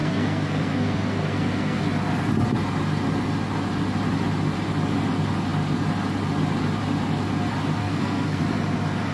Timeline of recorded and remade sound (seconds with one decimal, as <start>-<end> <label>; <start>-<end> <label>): 0.0-1.8 remade; 1.8-7.8 recorded; 7.8-8.4 remade; 8.4-9.1 recorded